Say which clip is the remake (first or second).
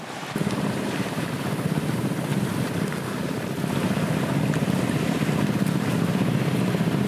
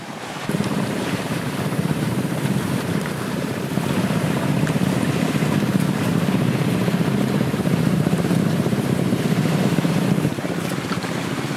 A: second